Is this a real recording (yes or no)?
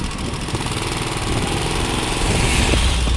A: no